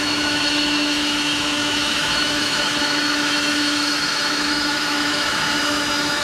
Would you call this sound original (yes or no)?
no